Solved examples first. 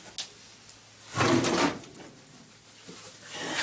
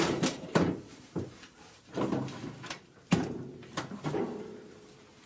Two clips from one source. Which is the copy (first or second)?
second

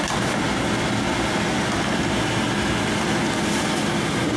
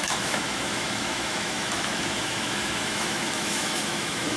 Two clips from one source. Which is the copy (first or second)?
second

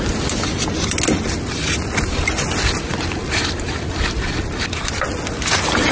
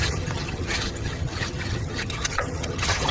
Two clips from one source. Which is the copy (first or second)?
second